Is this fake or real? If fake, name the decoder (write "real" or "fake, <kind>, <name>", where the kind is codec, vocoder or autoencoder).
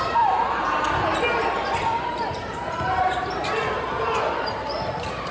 fake, vocoder, BigVGAN v2